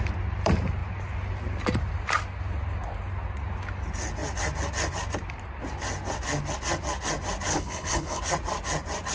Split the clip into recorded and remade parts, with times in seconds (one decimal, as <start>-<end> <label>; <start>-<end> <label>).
0.0-7.5 recorded; 7.5-8.2 remade; 8.2-9.1 recorded